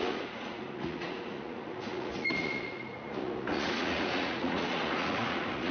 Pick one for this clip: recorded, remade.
remade